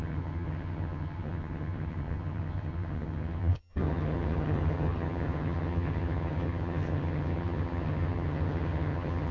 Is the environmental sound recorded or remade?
remade